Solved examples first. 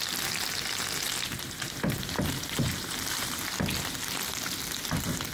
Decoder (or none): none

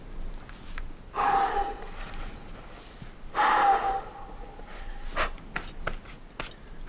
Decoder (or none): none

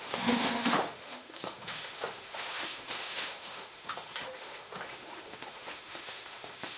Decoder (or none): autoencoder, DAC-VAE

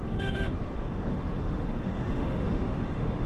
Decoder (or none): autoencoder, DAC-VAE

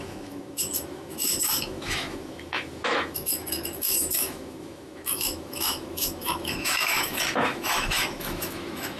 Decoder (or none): autoencoder, DAC-VAE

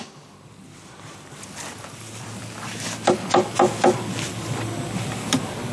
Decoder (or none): none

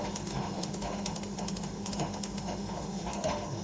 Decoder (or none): autoencoder, DAC-VAE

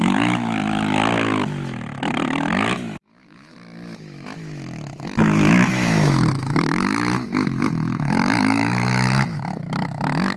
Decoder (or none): autoencoder, DAC-VAE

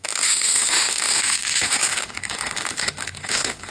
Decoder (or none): autoencoder, DAC-VAE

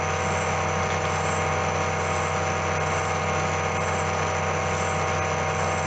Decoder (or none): none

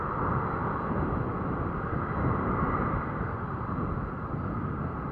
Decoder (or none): none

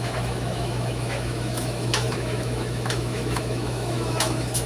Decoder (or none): autoencoder, DAC-VAE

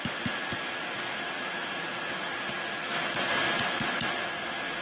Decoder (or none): none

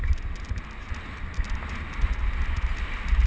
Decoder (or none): none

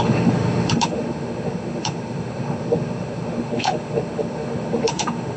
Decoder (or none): autoencoder, DAC-VAE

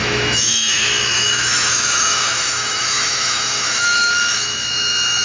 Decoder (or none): autoencoder, DAC-VAE